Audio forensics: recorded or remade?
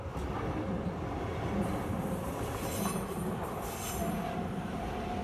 recorded